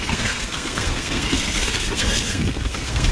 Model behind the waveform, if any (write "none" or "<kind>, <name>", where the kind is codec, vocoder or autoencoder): codec, SNAC